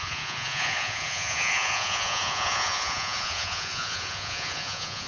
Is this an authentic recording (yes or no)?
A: no